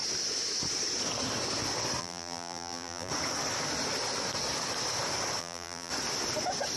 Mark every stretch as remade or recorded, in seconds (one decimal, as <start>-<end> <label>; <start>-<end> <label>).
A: 0.0-2.0 recorded; 2.0-3.1 remade; 3.1-5.4 recorded; 5.4-5.9 remade; 5.9-6.8 recorded